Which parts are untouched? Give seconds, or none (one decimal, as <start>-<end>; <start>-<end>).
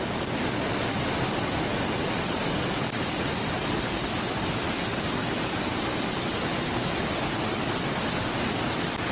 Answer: 0.0-2.0; 3.1-9.1